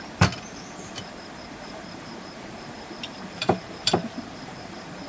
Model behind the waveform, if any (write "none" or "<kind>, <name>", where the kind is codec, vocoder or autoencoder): vocoder, BigVGAN v2